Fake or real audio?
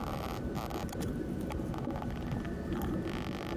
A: real